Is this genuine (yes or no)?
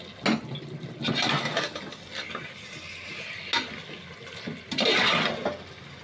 yes